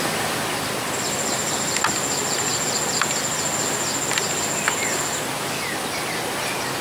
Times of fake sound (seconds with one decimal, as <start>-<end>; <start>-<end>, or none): none